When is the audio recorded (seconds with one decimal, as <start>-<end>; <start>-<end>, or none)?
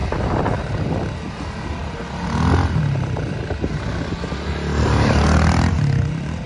0.0-6.5